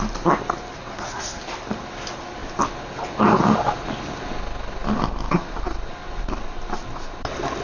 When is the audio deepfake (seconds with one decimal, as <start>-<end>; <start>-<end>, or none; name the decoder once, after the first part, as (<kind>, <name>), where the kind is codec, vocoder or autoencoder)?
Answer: 0.9-1.4 (codec, SNAC)